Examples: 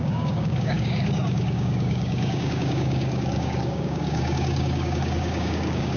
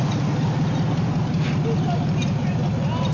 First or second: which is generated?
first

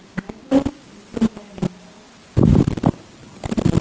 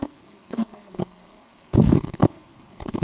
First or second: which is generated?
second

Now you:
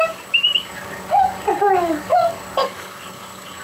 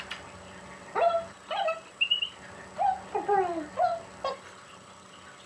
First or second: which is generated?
first